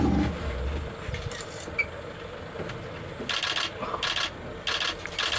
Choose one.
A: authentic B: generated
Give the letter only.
A